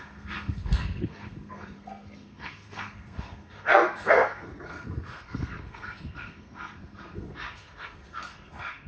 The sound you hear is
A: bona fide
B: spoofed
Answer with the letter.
B